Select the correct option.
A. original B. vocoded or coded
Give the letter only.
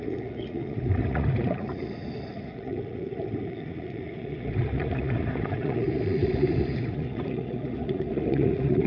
B